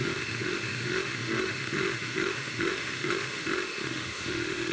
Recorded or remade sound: remade